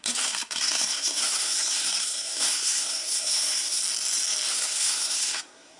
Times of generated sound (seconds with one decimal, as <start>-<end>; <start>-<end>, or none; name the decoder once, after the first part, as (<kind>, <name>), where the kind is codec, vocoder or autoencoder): 0.0-3.8 (codec, SNAC); 4.5-5.8